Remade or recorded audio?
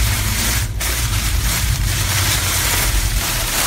remade